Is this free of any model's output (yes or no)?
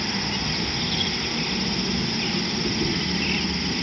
yes